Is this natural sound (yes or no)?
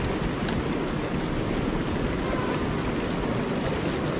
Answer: yes